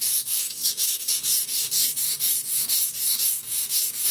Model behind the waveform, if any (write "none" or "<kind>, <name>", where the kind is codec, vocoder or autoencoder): codec, DAC